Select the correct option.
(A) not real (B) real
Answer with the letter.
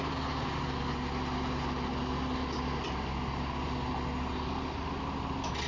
B